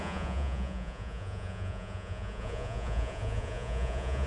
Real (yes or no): no